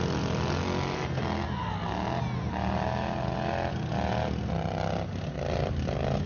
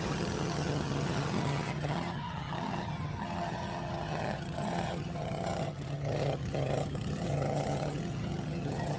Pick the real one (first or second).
first